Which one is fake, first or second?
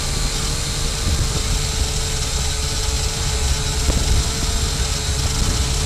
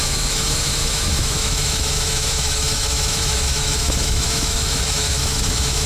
second